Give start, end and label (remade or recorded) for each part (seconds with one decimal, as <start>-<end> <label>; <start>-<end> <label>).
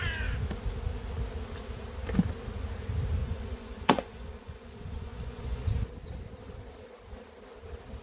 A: 0.0-3.2 recorded; 3.2-5.6 remade; 5.6-8.0 recorded